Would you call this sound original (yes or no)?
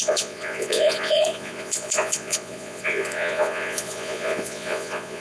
no